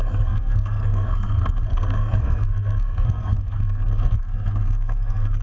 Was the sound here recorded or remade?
remade